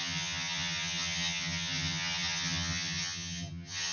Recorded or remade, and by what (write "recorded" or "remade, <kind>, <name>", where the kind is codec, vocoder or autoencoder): remade, vocoder, HiFi-GAN